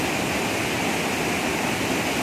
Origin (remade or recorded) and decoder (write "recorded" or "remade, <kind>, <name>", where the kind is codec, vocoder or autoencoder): recorded